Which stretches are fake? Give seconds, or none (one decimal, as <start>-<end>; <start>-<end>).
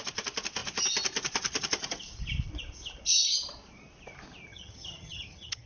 4.5-5.7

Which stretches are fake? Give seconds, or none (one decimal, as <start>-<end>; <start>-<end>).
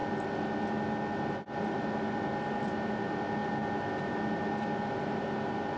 none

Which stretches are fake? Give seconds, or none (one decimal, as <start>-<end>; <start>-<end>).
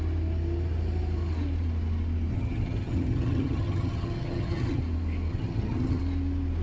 2.3-4.8; 5.3-6.0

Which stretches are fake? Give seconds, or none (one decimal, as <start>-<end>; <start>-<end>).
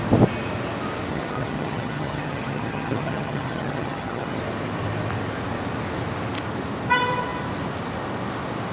1.1-4.4